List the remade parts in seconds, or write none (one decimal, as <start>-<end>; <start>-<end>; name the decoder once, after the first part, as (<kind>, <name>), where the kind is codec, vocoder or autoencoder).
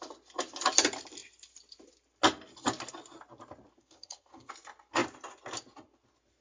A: 3.8-4.5 (codec, SNAC)